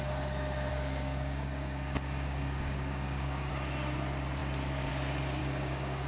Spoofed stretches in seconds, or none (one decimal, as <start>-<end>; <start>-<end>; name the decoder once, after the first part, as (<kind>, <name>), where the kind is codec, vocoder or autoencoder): 0.7-3.5 (codec, DAC); 5.4-6.1